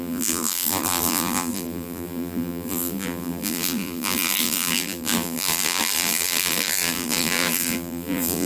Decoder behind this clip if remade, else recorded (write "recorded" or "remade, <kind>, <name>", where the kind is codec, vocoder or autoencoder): remade, vocoder, BigVGAN v2